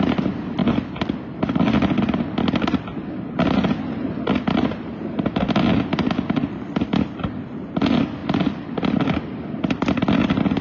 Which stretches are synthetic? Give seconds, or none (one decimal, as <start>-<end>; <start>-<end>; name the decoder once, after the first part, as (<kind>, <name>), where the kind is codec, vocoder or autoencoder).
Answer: none